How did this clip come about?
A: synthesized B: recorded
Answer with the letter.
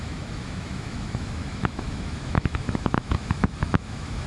A